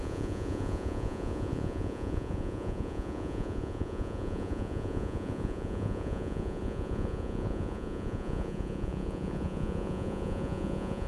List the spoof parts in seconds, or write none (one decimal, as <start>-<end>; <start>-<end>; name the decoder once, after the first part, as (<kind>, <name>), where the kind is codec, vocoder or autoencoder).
0.0-11.1 (vocoder, Vocos)